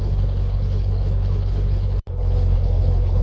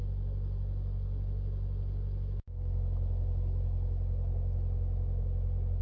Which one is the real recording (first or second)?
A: second